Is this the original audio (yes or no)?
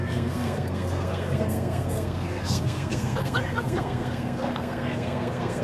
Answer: no